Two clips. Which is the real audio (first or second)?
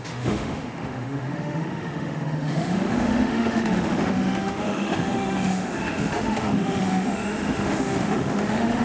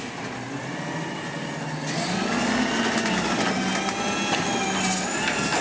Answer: second